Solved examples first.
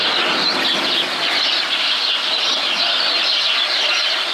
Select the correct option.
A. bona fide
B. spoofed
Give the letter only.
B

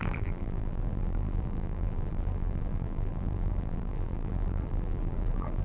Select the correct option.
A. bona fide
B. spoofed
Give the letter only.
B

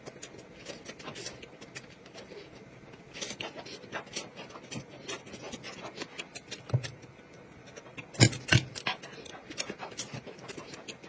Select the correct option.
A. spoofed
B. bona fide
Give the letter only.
A